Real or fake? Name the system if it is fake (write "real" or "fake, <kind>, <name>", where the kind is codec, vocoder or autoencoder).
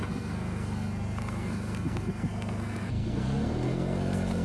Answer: fake, codec, SNAC